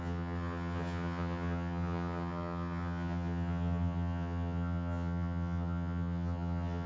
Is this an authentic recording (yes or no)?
no